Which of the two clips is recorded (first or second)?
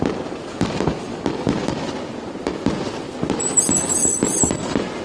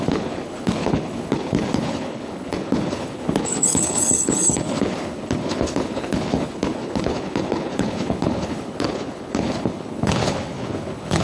first